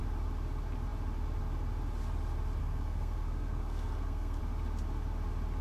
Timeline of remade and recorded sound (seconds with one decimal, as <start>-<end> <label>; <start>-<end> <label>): 0.0-2.6 recorded; 2.6-4.4 remade; 4.4-5.6 recorded